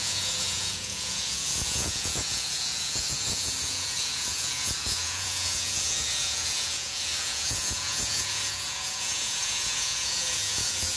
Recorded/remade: remade